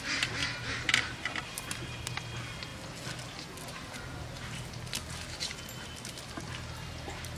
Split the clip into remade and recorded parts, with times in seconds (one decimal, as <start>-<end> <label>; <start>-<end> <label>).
0.0-7.4 recorded